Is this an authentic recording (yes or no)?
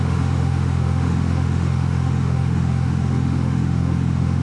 no